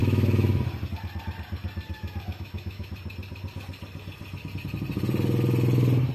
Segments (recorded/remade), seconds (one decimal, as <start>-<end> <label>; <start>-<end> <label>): 0.0-0.6 remade; 0.6-2.0 recorded; 2.0-2.9 remade; 2.9-6.1 recorded